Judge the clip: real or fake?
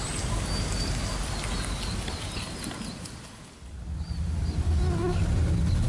real